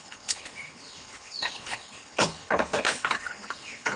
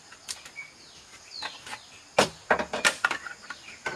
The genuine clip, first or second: second